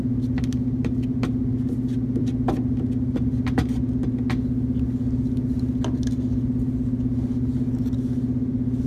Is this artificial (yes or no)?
no